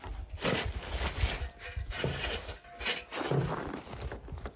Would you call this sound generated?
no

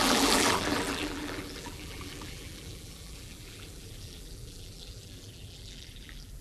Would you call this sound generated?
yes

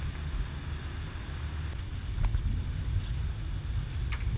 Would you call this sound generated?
no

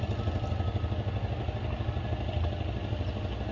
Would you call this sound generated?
no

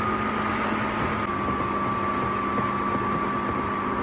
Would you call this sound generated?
no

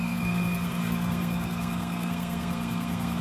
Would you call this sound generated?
yes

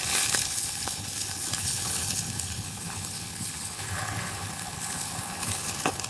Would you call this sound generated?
yes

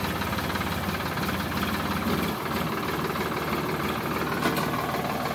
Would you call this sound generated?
no